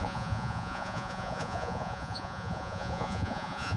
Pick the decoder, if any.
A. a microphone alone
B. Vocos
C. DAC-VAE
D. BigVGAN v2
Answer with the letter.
B